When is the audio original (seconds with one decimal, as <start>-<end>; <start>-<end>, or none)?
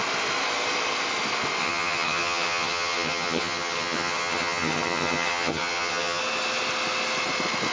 0.0-1.6; 6.2-7.7